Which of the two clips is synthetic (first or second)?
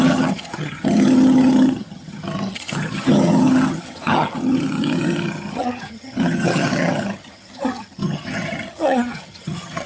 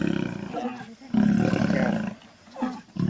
first